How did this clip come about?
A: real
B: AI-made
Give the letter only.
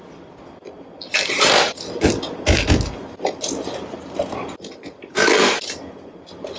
A